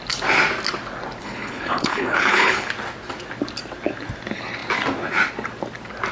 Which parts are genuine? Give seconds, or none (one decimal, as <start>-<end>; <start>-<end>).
0.0-1.2; 2.7-6.1